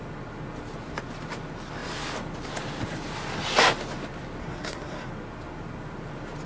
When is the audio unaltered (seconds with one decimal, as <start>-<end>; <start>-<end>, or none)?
0.0-4.4; 5.1-6.5